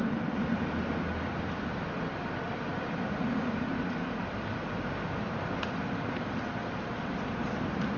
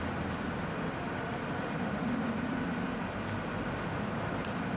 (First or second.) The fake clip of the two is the first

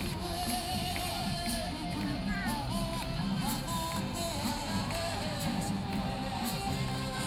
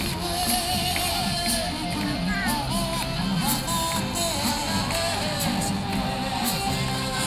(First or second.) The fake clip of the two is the first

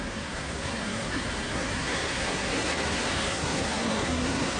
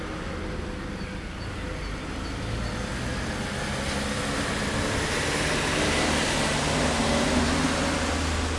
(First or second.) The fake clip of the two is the first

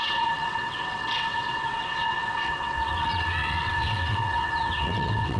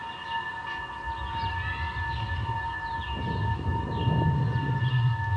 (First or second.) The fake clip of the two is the first